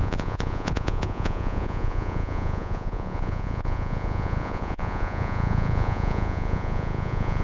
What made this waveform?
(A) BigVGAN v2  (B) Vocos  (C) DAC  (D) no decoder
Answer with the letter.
B